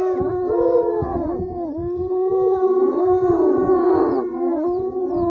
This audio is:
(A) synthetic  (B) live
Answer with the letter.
A